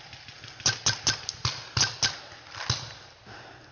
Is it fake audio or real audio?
real